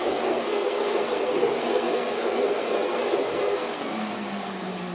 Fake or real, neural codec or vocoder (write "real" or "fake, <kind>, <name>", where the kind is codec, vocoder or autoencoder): fake, codec, SNAC